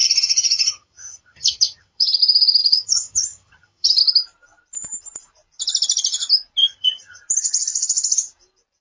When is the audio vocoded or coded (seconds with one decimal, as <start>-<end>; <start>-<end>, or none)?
0.0-2.2; 2.6-4.0; 6.6-7.2